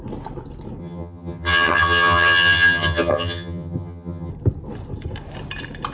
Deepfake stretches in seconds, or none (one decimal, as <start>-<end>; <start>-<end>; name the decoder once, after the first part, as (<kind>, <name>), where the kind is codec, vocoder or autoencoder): 0.8-4.3 (vocoder, HiFi-GAN)